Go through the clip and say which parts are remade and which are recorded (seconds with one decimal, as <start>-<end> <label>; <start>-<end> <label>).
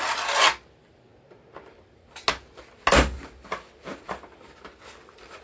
0.0-5.4 recorded